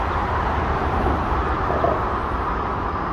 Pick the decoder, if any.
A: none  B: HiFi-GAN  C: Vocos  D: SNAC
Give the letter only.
A